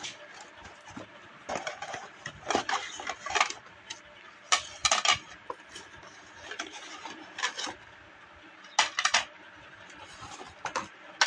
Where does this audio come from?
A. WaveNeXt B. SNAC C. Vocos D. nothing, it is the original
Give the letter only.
D